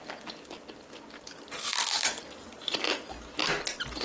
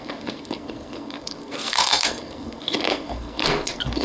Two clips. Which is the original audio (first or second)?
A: first